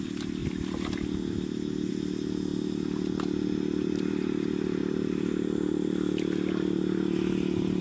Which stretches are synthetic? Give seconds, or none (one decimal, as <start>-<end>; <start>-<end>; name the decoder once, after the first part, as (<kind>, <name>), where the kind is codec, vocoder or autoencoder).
none